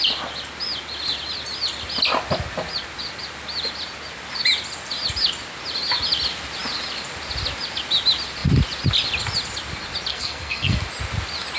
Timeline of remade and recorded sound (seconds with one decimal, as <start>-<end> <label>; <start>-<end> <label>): 0.0-10.1 recorded; 10.1-10.8 remade; 10.8-11.6 recorded